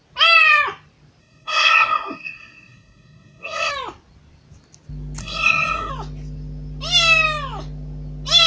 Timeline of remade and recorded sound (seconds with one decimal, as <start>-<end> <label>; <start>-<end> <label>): 0.0-1.2 recorded; 1.2-3.7 remade; 3.7-5.2 recorded; 5.2-5.9 remade; 5.9-8.5 recorded